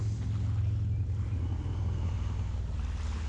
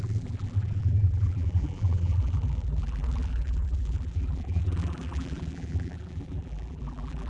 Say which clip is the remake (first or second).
second